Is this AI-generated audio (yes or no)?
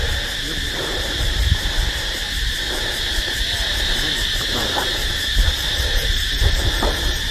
yes